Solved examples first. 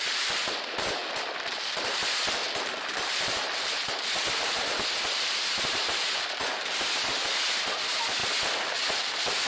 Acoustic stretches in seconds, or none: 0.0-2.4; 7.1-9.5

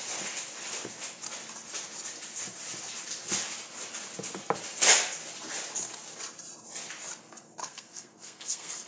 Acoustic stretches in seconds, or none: 0.0-7.6